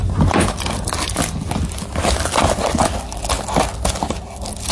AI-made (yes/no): no